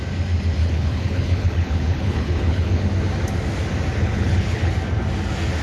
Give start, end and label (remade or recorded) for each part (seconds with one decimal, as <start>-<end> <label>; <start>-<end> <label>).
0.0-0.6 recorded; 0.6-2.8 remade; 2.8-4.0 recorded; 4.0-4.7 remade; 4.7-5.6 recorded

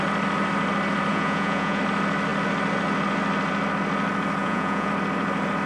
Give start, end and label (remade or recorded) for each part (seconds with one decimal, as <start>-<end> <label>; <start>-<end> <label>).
0.0-1.1 recorded; 1.1-1.8 remade; 1.8-4.4 recorded; 4.4-4.9 remade; 4.9-5.7 recorded

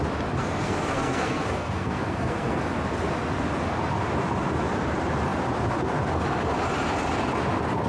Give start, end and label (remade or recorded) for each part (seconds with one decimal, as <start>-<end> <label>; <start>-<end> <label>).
0.0-0.4 recorded; 0.4-2.6 remade; 2.6-7.9 recorded